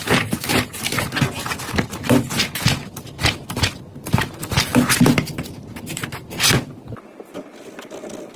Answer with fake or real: real